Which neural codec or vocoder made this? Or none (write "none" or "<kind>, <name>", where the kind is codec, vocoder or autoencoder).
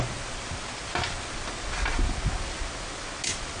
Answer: none